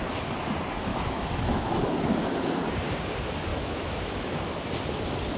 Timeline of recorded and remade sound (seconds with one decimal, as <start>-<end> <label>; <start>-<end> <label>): 0.0-0.9 recorded; 0.9-1.7 remade; 1.7-3.5 recorded; 3.5-4.7 remade; 4.7-5.4 recorded